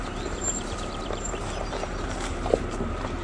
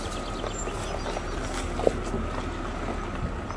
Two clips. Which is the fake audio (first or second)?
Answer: first